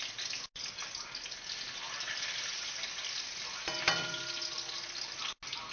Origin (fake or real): real